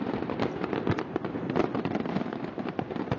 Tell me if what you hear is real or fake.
fake